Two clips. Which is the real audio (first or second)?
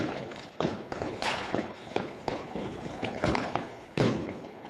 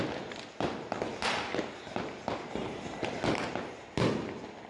second